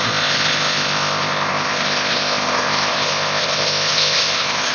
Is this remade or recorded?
remade